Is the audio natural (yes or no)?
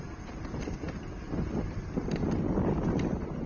no